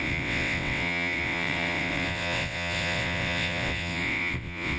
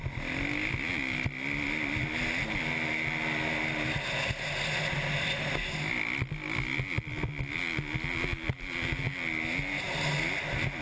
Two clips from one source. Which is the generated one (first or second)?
first